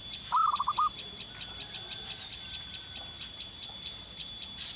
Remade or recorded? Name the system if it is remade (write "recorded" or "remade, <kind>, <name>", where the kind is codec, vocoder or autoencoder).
recorded